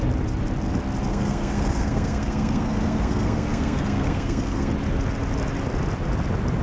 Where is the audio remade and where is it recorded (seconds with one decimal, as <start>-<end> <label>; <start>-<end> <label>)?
0.0-1.1 recorded; 1.1-4.7 remade; 4.7-6.6 recorded

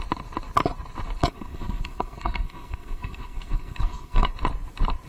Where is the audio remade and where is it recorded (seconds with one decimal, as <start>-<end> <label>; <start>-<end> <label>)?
0.0-1.2 recorded; 1.2-4.3 remade; 4.3-5.1 recorded

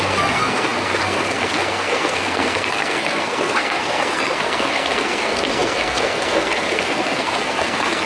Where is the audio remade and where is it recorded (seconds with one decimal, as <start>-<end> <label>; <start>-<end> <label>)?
0.0-8.1 remade

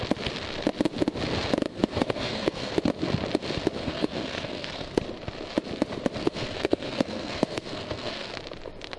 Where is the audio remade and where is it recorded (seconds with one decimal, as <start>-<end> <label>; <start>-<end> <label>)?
0.0-1.7 recorded; 1.7-2.7 remade; 2.7-3.8 recorded; 3.8-5.0 remade; 5.0-6.2 recorded; 6.2-8.3 remade; 8.3-9.0 recorded

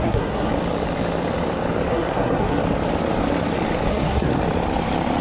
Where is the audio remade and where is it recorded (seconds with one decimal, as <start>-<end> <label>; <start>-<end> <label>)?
0.0-0.5 remade; 0.5-1.9 recorded; 1.9-2.6 remade; 2.6-3.9 recorded; 3.9-4.3 remade; 4.3-5.2 recorded